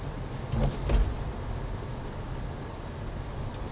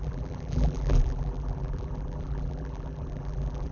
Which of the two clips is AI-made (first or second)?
second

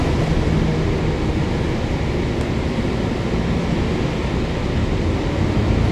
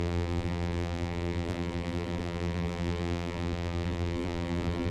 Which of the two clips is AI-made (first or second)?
second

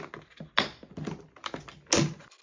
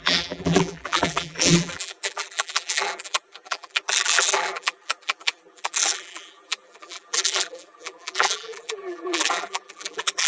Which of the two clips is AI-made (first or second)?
second